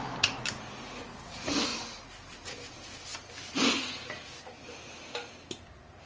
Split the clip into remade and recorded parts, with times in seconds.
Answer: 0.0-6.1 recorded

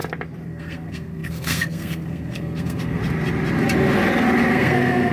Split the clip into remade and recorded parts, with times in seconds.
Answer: 0.0-0.5 recorded; 0.5-3.0 remade; 3.0-4.5 recorded; 4.5-5.1 remade

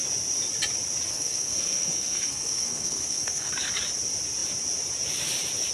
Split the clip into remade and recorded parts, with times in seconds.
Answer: 0.0-1.1 recorded; 1.1-3.5 remade; 3.5-5.7 recorded

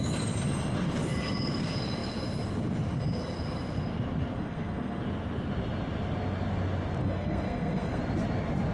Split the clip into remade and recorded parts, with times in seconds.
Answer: 0.0-4.3 recorded; 4.3-5.0 remade; 5.0-7.0 recorded; 7.0-8.0 remade; 8.0-8.7 recorded